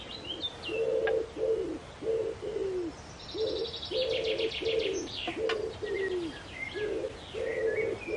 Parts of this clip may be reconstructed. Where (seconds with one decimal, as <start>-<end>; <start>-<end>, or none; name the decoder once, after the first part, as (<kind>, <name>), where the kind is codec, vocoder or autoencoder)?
none